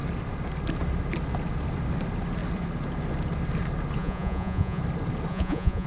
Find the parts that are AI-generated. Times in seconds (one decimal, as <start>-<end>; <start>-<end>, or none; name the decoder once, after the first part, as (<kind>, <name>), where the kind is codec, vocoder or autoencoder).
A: 4.0-4.8 (vocoder, Vocos); 5.3-5.9